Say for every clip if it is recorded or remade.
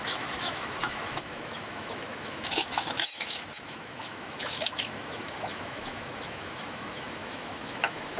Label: remade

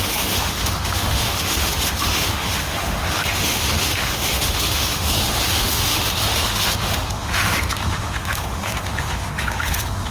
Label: remade